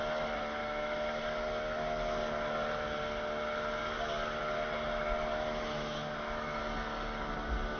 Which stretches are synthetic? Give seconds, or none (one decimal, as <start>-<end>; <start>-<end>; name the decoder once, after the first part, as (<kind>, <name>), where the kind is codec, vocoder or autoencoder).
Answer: 0.6-1.2 (autoencoder, DAC-VAE); 5.3-6.6